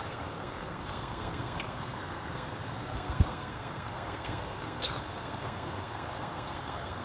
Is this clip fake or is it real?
fake